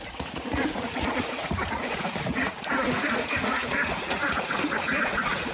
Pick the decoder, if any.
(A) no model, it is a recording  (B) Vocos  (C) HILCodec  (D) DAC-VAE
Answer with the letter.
B